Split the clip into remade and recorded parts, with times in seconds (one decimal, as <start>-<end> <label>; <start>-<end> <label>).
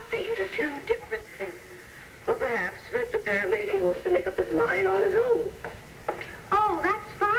0.0-0.7 remade; 0.7-3.6 recorded; 3.6-5.8 remade; 5.8-7.4 recorded